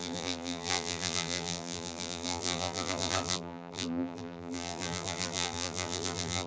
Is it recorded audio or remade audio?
remade